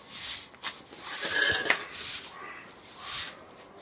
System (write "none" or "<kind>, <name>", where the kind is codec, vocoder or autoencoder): none